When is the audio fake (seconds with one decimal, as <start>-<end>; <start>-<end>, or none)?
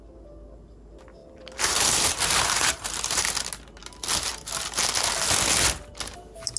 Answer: 1.2-3.3